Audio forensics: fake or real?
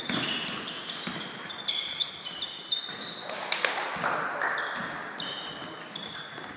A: real